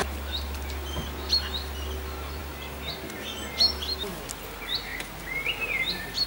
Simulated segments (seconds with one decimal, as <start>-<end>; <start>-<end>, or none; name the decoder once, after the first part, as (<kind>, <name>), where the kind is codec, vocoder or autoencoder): none